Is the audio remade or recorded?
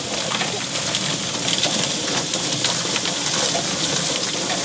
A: remade